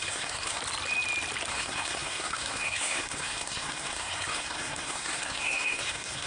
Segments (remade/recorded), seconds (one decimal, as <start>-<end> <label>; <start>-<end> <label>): 0.0-0.6 remade; 0.6-1.5 recorded; 1.5-6.3 remade